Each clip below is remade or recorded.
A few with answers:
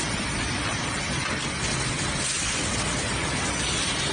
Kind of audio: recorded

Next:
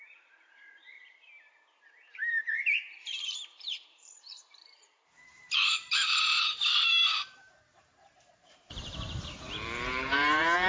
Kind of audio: remade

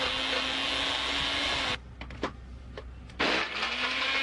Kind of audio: recorded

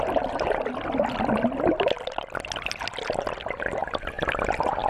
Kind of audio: recorded